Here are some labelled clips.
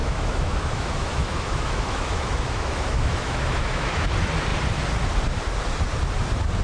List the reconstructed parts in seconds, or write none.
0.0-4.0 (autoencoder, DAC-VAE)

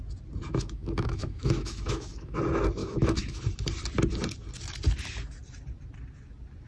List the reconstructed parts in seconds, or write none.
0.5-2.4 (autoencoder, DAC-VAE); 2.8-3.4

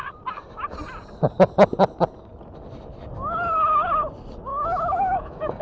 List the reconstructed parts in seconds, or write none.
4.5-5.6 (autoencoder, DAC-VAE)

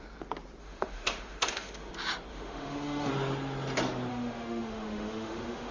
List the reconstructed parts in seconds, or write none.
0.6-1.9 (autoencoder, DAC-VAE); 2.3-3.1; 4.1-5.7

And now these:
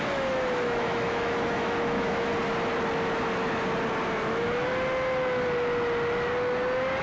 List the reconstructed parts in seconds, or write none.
0.0-2.3 (autoencoder, DAC-VAE); 4.2-4.7

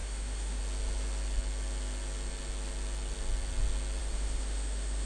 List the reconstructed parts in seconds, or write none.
0.0-0.6 (autoencoder, DAC-VAE); 4.0-5.1